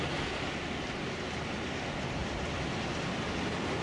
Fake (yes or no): no